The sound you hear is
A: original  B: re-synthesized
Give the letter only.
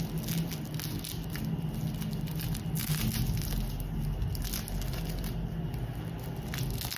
A